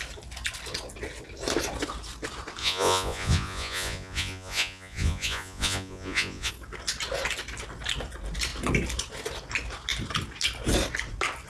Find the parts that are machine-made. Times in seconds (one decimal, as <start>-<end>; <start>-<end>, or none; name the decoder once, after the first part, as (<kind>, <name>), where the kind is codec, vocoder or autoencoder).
2.6-6.5 (vocoder, Vocos)